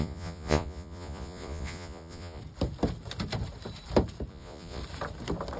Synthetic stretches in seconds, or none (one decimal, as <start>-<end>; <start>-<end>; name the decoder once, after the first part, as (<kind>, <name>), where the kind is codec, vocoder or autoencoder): 0.0-2.4 (vocoder, Vocos); 4.3-4.8